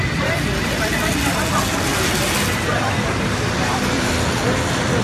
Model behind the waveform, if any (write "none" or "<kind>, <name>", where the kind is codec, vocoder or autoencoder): none